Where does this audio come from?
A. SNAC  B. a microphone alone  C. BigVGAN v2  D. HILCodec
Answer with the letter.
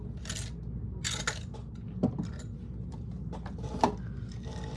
B